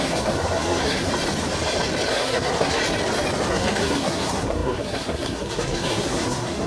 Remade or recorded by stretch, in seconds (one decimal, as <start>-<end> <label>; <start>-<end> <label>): 0.0-1.1 remade; 1.1-2.1 recorded; 2.1-2.8 remade; 2.8-3.5 recorded; 3.5-6.7 remade

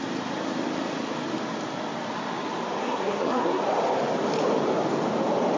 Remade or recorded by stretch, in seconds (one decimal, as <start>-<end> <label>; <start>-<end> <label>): 0.0-2.8 recorded; 2.8-3.6 remade; 3.6-5.6 recorded